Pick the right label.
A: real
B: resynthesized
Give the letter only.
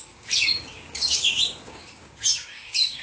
B